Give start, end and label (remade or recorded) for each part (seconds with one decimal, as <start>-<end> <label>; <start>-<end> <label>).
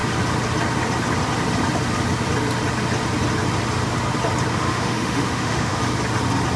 0.0-4.5 recorded; 4.5-5.8 remade; 5.8-6.6 recorded